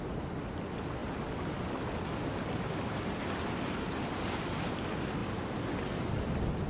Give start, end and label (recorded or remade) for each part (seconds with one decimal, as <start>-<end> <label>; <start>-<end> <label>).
0.0-6.7 recorded